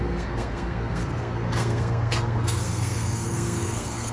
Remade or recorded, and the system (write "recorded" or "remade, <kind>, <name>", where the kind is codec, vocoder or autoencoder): remade, codec, SNAC